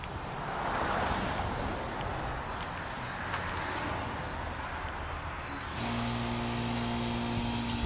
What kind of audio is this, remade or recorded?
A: recorded